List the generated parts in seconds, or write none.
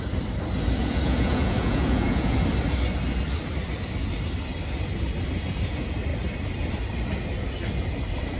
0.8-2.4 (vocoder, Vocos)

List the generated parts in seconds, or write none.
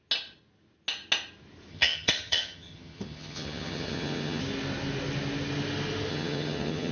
1.7-4.4 (vocoder, HiFi-GAN); 6.1-6.9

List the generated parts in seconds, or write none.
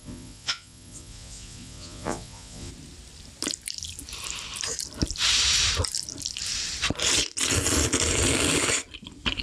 0.0-2.7 (vocoder, Vocos)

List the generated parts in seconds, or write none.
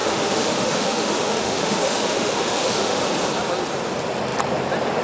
0.0-3.0 (autoencoder, DAC-VAE)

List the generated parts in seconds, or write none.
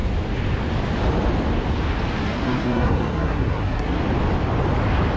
2.2-4.0 (codec, SNAC)